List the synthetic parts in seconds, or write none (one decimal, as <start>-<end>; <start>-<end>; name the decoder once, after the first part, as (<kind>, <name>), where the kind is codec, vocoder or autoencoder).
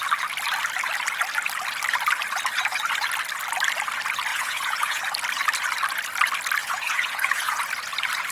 4.3-5.0 (vocoder, Vocos); 6.6-7.6